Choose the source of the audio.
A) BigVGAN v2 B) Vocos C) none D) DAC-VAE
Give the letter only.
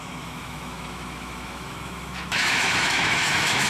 D